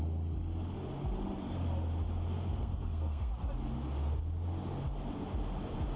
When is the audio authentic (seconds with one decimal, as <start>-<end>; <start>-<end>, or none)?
0.0-2.5; 3.3-6.0